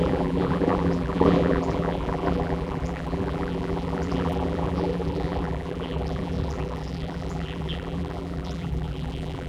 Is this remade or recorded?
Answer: remade